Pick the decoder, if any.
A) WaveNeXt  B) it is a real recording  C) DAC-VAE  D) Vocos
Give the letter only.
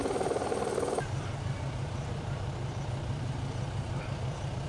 B